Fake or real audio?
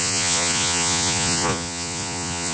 fake